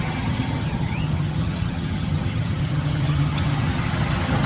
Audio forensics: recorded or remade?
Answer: remade